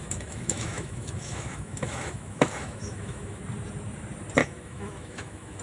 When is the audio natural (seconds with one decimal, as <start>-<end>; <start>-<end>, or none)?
3.4-4.4